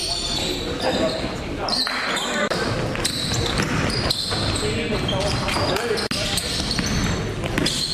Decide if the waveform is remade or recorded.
recorded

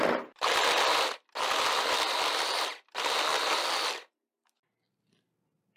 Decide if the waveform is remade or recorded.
recorded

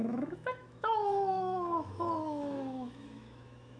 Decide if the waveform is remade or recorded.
remade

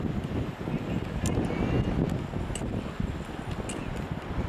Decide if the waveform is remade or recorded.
recorded